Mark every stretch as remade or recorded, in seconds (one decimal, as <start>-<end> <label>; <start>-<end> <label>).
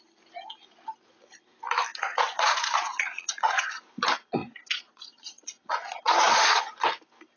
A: 0.0-2.1 recorded; 2.1-3.8 remade; 3.8-4.4 recorded; 4.4-6.6 remade; 6.6-7.4 recorded